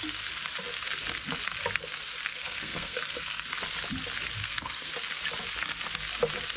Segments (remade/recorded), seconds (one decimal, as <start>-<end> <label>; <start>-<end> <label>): 0.0-2.3 recorded; 2.3-3.5 remade; 3.5-4.4 recorded; 4.4-4.9 remade; 4.9-6.6 recorded